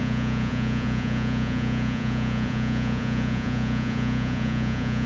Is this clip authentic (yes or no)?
no